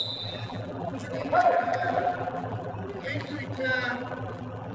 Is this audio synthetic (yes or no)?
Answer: yes